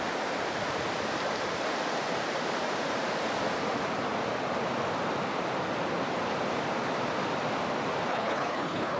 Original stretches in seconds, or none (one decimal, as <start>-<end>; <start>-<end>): 0.0-8.1